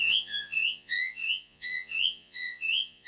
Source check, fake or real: fake